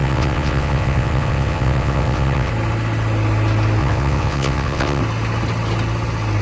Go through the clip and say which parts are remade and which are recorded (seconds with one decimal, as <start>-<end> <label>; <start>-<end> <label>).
0.0-2.5 remade; 2.5-3.8 recorded; 3.8-5.0 remade; 5.0-6.4 recorded